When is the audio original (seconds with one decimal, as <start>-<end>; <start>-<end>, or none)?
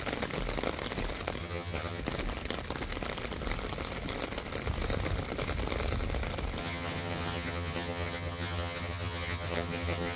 0.0-1.4; 2.0-6.6